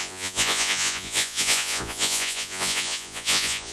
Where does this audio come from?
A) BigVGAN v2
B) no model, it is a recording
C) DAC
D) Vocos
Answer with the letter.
D